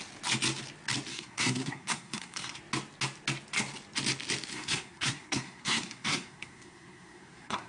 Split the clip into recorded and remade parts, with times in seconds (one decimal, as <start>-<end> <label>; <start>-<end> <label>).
0.0-1.1 recorded; 1.1-2.6 remade; 2.6-4.5 recorded; 4.5-7.7 remade